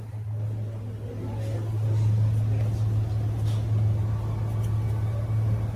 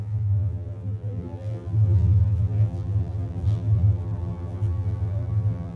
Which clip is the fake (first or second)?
second